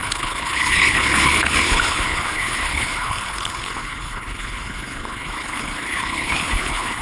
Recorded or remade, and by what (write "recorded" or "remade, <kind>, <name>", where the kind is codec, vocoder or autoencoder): remade, codec, HILCodec